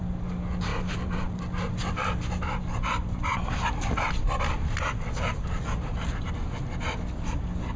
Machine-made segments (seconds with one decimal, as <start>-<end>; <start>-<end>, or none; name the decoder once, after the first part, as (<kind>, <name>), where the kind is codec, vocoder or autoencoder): 0.7-1.4 (vocoder, BigVGAN v2)